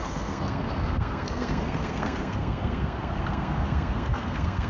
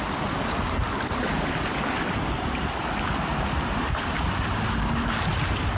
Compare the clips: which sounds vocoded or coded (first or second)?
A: first